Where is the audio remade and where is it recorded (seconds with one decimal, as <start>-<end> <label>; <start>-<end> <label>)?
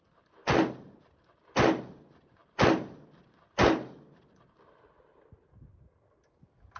0.0-6.8 recorded